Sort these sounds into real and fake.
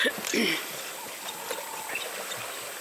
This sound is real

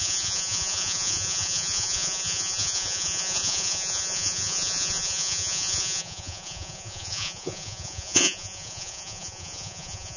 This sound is fake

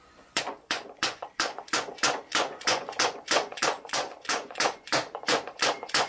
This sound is fake